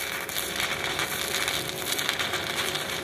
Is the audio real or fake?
real